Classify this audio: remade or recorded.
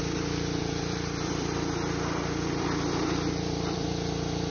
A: remade